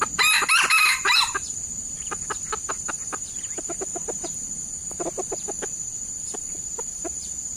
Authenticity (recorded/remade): recorded